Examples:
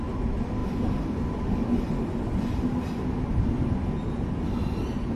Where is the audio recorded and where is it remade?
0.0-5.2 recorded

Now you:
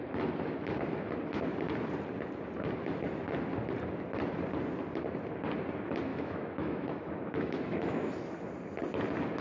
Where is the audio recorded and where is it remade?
0.0-6.1 recorded; 6.1-8.1 remade; 8.1-9.4 recorded